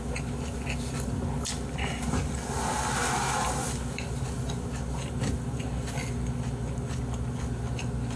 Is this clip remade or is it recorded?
recorded